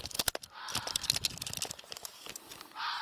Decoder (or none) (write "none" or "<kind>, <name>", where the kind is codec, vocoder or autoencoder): none